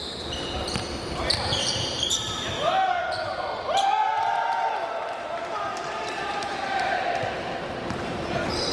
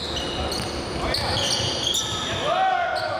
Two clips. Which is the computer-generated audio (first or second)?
first